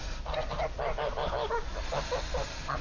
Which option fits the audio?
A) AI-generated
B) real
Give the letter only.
B